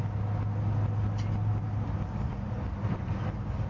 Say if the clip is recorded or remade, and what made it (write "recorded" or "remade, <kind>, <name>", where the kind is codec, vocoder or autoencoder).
recorded